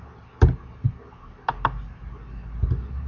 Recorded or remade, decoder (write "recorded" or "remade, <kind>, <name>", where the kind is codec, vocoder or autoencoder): recorded